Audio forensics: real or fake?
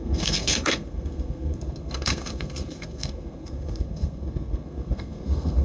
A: fake